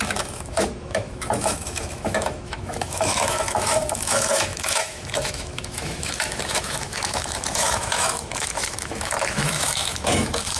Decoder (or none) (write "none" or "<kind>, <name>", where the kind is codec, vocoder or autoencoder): autoencoder, DAC-VAE